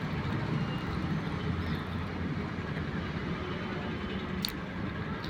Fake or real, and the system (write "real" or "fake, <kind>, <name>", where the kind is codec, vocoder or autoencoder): real